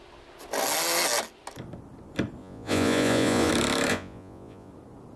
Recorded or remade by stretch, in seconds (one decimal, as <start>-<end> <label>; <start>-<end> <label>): 0.0-2.4 recorded; 2.4-3.5 remade; 3.5-3.9 recorded; 3.9-4.7 remade; 4.7-5.2 recorded